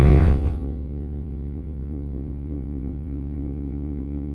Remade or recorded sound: remade